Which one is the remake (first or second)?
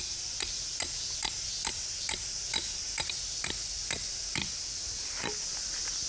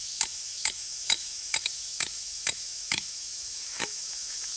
second